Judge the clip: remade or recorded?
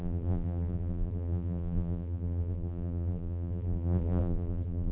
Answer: remade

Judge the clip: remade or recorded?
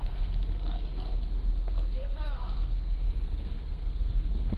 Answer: remade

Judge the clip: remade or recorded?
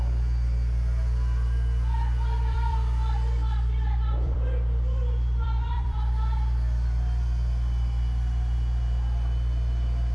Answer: remade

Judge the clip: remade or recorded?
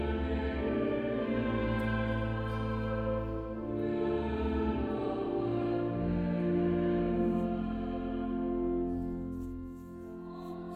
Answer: recorded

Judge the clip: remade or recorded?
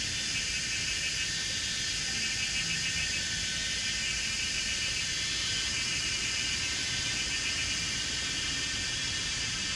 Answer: recorded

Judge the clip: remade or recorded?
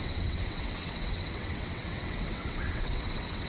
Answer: remade